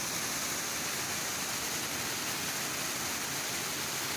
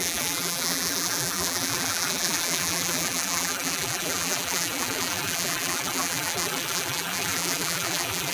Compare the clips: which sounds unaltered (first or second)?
first